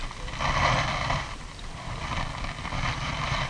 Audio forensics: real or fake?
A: real